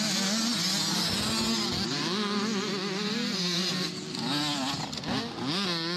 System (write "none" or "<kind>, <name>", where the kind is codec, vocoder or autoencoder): none